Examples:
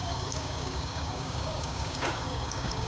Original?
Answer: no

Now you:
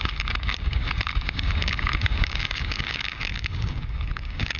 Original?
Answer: no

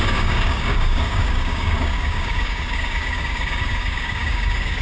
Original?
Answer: no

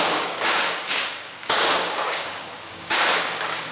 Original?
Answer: no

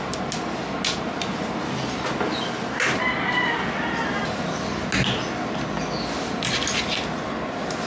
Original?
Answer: yes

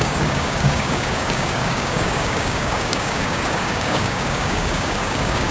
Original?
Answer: no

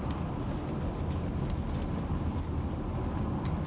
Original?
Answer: yes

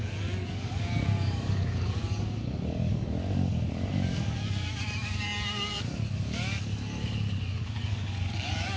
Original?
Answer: no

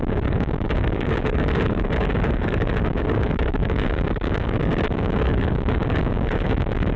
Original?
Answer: no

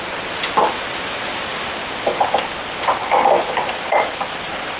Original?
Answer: yes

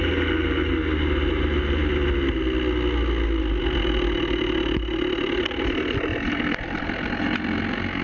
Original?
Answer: yes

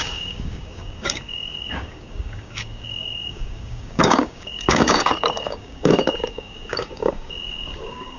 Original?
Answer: no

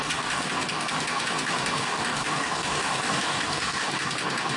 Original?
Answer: no